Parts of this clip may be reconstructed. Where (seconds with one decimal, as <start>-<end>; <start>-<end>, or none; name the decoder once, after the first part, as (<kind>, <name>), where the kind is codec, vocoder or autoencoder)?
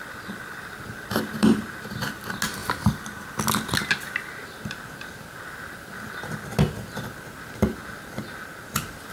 none